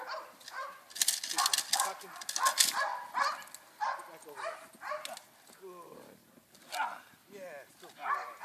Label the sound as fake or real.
real